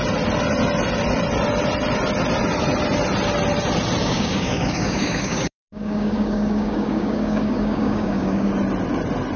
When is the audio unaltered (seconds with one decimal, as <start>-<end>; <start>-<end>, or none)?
0.0-4.0; 8.5-9.4